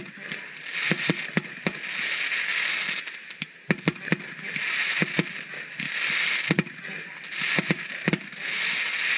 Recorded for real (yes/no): yes